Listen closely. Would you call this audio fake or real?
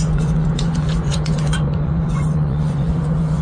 fake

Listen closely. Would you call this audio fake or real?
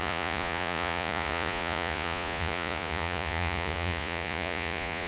fake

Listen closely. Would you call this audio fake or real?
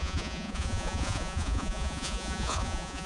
fake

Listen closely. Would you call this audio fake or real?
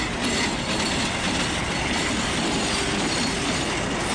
real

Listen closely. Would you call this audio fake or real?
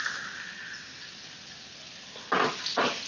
real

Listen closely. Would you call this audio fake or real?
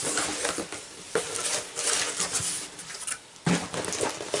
real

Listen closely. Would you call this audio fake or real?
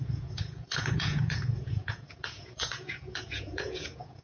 fake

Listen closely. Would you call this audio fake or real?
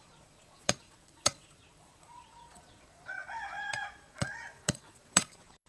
fake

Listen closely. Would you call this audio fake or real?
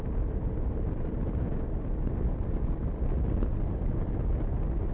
real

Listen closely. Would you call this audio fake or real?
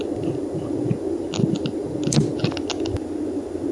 real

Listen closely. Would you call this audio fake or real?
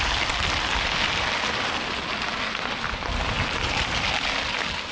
real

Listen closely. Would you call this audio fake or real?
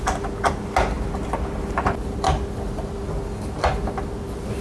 real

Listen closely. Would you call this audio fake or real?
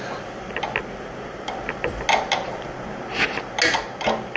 real